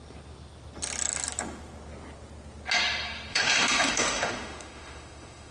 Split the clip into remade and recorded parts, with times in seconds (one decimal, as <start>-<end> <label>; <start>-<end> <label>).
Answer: 0.0-3.3 recorded; 3.3-5.5 remade

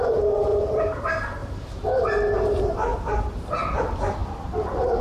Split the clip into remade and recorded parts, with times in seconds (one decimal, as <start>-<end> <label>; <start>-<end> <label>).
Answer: 0.0-0.5 recorded; 0.5-1.0 remade; 1.0-2.9 recorded; 2.9-3.5 remade; 3.5-4.2 recorded; 4.2-5.0 remade